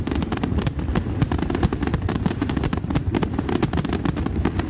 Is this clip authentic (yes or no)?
yes